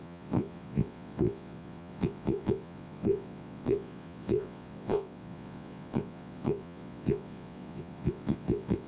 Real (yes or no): no